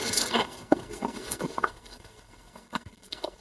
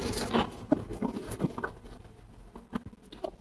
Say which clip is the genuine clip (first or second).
second